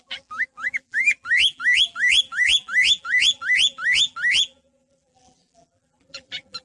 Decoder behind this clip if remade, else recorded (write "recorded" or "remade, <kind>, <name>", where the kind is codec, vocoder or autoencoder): remade, vocoder, BigVGAN v2